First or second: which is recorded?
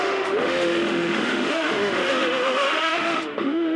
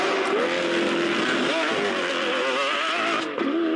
second